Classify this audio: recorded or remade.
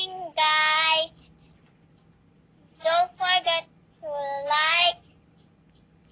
recorded